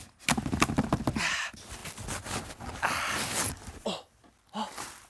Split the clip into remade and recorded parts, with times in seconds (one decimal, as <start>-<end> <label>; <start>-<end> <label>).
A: 0.0-5.1 recorded

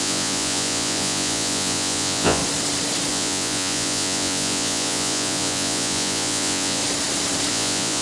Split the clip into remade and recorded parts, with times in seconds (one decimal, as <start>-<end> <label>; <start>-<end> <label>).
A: 0.0-2.4 remade; 2.4-3.1 recorded; 3.1-6.8 remade; 6.8-7.5 recorded; 7.5-8.0 remade

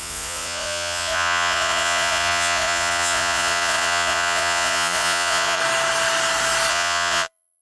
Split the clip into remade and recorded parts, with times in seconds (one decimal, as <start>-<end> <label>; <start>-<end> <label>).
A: 0.0-5.6 remade; 5.6-6.7 recorded; 6.7-7.6 remade

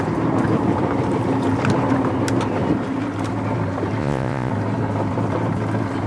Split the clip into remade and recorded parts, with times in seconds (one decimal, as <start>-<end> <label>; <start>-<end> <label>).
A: 0.0-4.0 recorded; 4.0-4.5 remade; 4.5-6.1 recorded

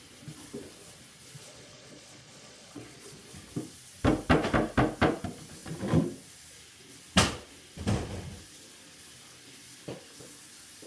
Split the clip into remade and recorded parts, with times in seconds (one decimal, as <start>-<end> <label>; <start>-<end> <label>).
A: 0.0-1.4 recorded; 1.4-3.2 remade; 3.2-10.9 recorded

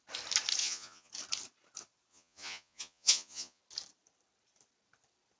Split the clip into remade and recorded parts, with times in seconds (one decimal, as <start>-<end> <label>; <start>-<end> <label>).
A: 0.0-0.6 recorded; 0.6-1.1 remade; 1.1-2.1 recorded; 2.1-3.6 remade; 3.6-5.4 recorded

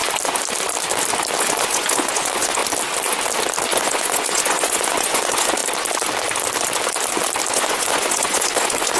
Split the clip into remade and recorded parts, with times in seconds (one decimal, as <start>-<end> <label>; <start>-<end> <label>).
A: 0.0-1.4 recorded; 1.4-2.6 remade; 2.6-3.7 recorded; 3.7-5.6 remade; 5.6-7.5 recorded; 7.5-9.0 remade